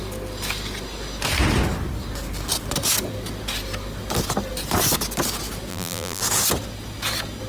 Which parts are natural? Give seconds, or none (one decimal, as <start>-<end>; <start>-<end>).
0.0-5.7; 6.2-7.5